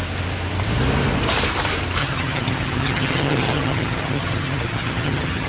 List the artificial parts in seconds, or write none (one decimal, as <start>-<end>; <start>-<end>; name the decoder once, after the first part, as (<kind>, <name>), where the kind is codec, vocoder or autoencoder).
2.0-5.5 (vocoder, HiFi-GAN)